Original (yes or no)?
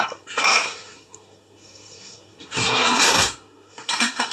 no